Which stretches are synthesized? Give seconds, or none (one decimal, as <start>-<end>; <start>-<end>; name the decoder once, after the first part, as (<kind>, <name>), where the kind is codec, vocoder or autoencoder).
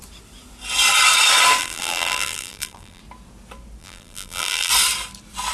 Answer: 1.6-3.0 (vocoder, BigVGAN v2); 3.8-4.7